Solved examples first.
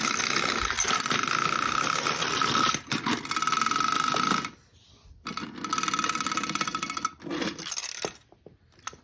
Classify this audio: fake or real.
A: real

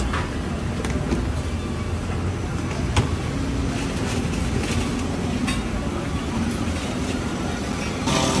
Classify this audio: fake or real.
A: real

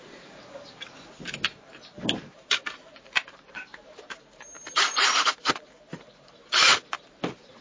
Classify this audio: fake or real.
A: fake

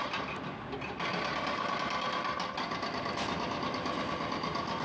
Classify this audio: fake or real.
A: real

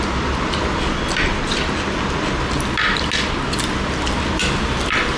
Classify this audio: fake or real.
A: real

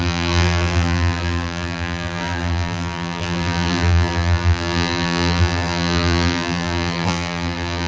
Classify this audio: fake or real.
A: fake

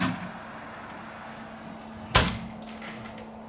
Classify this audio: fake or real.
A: real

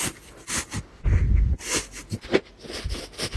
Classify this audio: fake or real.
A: real